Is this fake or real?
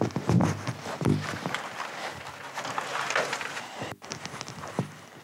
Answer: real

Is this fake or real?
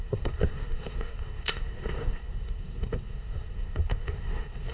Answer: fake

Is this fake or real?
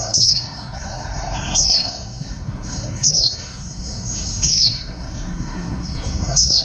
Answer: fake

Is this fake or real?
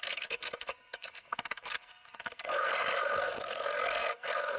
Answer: fake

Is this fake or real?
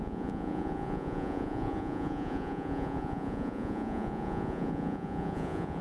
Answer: fake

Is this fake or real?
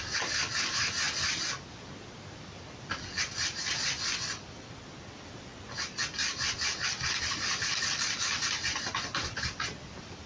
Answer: real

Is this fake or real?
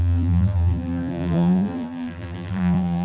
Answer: fake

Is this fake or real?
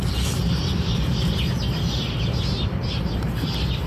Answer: fake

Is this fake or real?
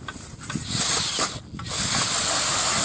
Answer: real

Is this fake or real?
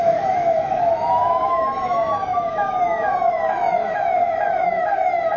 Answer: fake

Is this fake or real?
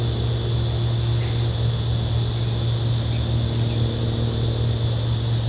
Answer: real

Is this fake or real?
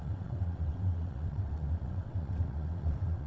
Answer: fake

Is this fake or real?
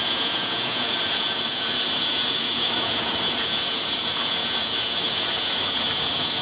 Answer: fake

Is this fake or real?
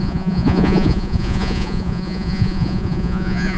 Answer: fake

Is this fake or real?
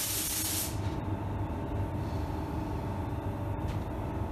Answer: real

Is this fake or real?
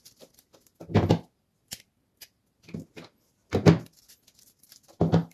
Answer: real